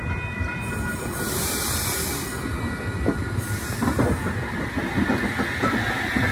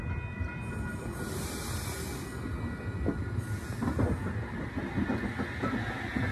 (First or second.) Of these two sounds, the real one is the second